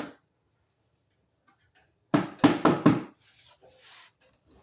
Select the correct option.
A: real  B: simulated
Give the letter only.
A